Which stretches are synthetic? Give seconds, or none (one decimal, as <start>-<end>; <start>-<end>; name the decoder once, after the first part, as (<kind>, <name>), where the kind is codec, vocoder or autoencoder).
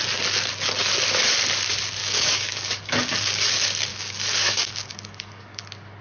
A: 2.0-3.5 (codec, DAC); 3.9-5.6